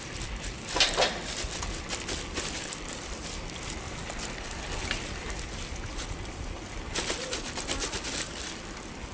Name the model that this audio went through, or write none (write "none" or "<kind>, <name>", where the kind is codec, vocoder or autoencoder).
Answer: none